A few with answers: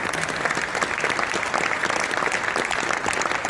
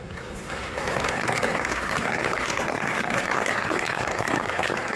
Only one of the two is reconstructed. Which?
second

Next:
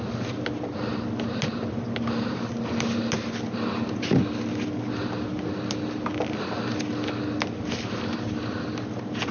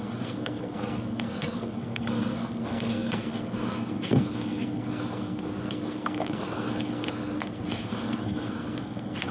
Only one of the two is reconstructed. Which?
second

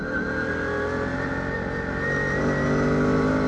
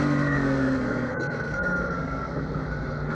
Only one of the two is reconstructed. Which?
second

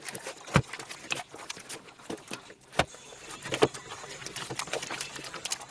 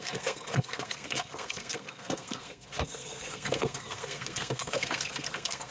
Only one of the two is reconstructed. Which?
second